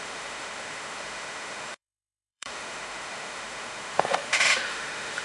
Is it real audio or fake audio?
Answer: fake